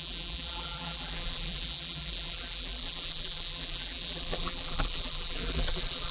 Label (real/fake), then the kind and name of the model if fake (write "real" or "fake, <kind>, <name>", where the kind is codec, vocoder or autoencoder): fake, vocoder, BigVGAN v2